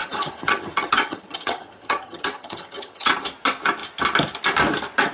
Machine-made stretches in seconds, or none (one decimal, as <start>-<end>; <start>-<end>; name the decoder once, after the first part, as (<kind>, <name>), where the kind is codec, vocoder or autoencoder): 0.0-3.1 (vocoder, HiFi-GAN)